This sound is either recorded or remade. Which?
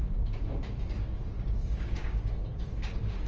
remade